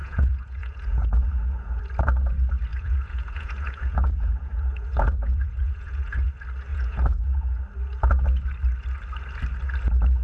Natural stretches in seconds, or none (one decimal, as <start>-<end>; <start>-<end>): 1.8-2.7; 6.3-6.7; 7.6-10.2